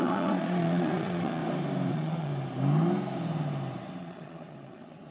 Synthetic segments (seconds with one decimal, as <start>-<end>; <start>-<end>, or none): 0.0-1.4; 1.9-2.3; 4.0-5.1